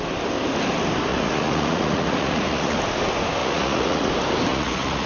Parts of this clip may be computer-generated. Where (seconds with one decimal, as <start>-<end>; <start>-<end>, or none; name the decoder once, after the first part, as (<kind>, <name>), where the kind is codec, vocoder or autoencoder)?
1.1-2.8 (vocoder, Vocos); 3.4-4.1; 4.5-5.1